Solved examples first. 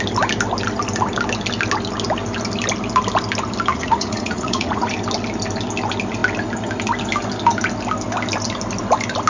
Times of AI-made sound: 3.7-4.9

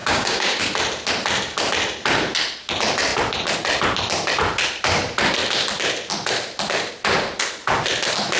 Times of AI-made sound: 0.0-0.6